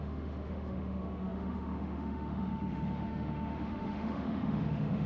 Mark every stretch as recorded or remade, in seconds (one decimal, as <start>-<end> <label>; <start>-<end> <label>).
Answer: 0.0-5.1 remade